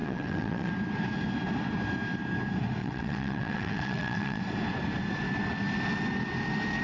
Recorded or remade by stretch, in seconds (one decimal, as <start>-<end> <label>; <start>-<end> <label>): 0.0-0.7 remade; 0.7-2.8 recorded; 2.8-4.4 remade; 4.4-6.8 recorded